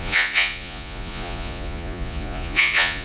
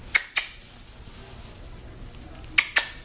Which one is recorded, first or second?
second